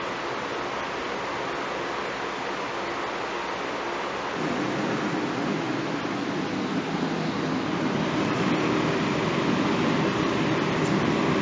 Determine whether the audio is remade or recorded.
recorded